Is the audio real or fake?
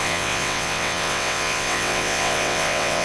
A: fake